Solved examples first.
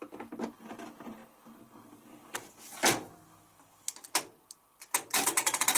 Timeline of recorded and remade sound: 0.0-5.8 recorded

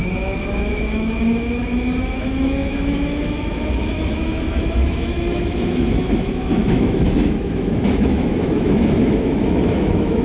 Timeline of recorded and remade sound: 0.0-10.2 remade

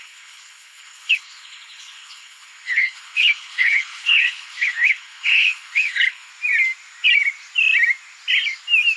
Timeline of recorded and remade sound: 0.0-6.3 remade; 6.3-9.0 recorded

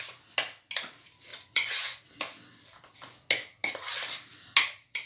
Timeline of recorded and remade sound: 0.0-1.3 recorded; 1.3-2.0 remade; 2.0-5.1 recorded